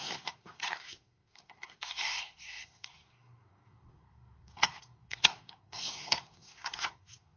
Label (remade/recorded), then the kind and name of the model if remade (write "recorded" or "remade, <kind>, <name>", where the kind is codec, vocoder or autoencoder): remade, codec, SNAC